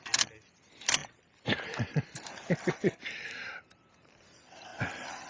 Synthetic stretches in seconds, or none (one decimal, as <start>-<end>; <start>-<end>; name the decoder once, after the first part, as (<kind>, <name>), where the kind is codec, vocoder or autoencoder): 1.0-4.2 (vocoder, BigVGAN v2)